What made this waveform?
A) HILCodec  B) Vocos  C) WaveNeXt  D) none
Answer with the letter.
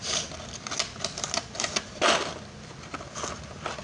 D